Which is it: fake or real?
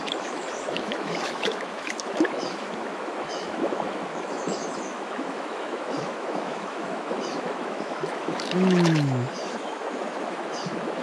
fake